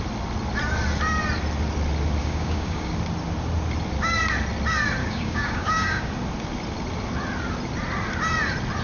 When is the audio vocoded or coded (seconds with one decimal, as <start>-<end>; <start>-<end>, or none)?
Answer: 2.2-2.9; 5.0-6.1

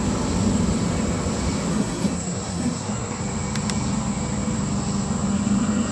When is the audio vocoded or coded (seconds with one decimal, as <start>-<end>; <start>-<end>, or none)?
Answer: 1.7-3.2

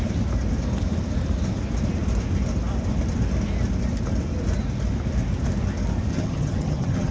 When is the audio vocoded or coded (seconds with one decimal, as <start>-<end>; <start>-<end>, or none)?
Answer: 6.1-7.1

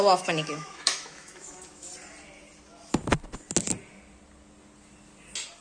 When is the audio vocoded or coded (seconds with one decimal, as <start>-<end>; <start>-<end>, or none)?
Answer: 0.0-1.9

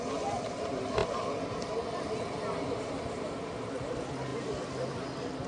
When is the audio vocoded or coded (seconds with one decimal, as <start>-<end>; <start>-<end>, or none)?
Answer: none